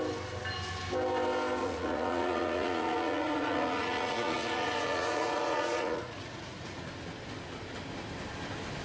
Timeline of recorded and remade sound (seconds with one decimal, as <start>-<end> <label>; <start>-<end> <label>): 0.0-1.6 recorded; 1.6-6.9 remade; 6.9-8.8 recorded